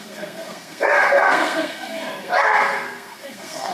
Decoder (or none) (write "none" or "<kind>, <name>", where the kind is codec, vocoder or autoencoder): codec, SNAC